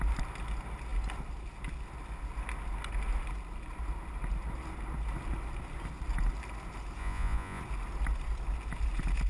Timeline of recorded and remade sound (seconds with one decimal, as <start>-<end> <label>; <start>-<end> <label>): 0.0-7.0 recorded; 7.0-7.6 remade; 7.6-9.3 recorded